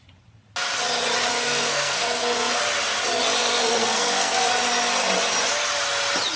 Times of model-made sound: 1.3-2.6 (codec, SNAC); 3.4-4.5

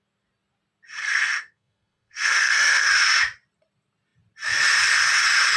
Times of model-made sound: 1.0-2.9 (codec, SNAC)

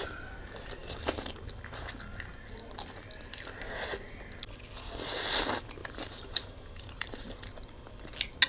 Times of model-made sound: 5.8-7.3 (vocoder, BigVGAN v2)

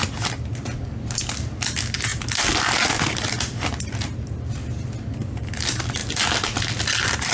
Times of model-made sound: none

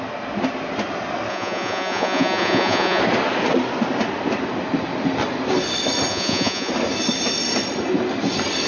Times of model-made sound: 1.3-3.0 (vocoder, Vocos); 6.1-6.7